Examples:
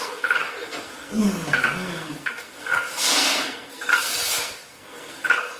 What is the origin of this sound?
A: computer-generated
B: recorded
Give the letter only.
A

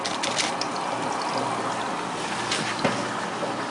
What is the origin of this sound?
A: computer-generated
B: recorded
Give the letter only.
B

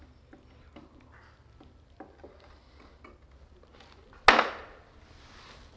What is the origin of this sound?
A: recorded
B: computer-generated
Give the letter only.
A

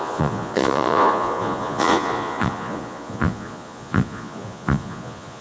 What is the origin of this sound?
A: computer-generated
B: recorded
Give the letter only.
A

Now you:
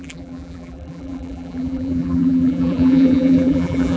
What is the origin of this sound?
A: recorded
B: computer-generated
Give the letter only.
B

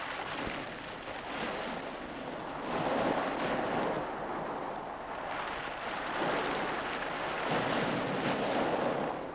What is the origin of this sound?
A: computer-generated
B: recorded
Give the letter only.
B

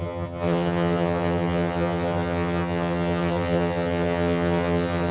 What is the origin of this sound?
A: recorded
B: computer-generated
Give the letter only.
B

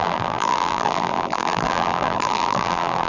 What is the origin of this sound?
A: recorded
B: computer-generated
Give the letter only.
B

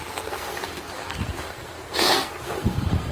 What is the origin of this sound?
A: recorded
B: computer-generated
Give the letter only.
B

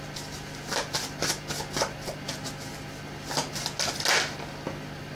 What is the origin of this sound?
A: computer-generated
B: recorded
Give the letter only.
B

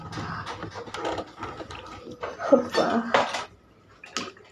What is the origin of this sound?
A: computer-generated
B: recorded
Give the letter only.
B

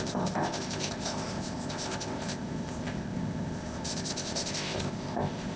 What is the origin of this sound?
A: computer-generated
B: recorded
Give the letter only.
A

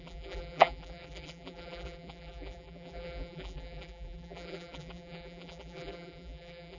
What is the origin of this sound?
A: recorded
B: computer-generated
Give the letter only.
B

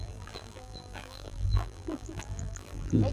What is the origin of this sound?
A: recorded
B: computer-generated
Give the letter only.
B